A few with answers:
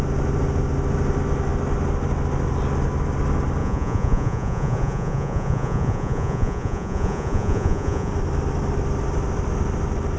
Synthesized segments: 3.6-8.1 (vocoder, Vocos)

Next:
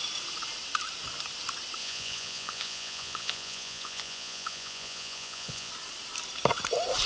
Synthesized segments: 1.8-5.7 (vocoder, Vocos)

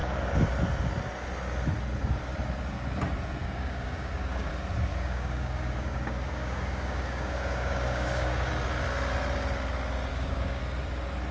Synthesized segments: 0.0-0.5 (codec, DAC); 3.4-4.5; 4.9-8.5; 10.1-10.6

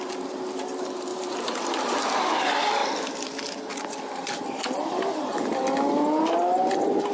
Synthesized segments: 1.1-2.0 (vocoder, BigVGAN v2)

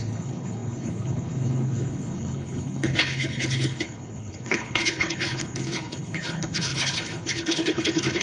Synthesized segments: 0.0-8.2 (codec, HILCodec)

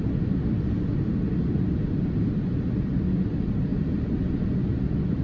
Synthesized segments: none

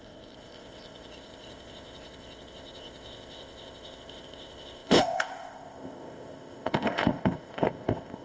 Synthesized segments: 0.0-8.2 (codec, ZipCodec)

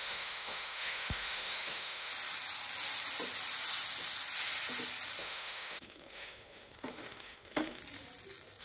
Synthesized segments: 0.0-2.1 (autoencoder, DAC-VAE); 5.2-7.8